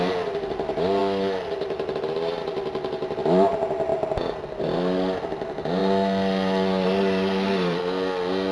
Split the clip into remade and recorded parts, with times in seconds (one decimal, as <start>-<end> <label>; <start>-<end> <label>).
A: 0.0-1.0 recorded; 1.0-3.5 remade; 3.5-5.8 recorded; 5.8-7.8 remade; 7.8-8.5 recorded